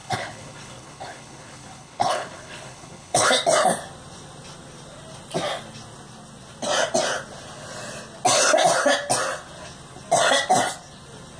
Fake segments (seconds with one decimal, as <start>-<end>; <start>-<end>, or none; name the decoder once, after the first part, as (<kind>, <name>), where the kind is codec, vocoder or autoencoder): 0.0-3.3 (codec, HILCodec)